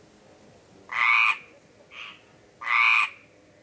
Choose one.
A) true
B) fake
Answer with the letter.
A